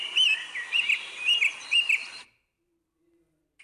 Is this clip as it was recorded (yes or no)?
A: no